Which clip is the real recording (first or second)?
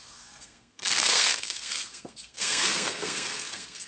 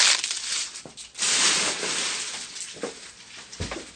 second